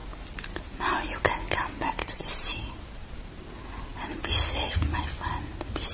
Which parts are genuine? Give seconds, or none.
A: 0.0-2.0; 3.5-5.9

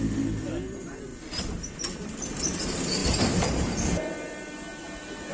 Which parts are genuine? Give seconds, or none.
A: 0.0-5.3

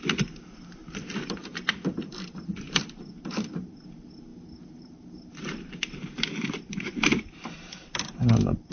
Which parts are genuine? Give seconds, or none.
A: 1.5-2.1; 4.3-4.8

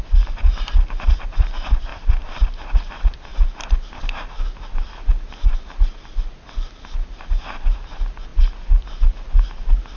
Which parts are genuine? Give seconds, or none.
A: 0.0-1.9; 2.9-10.0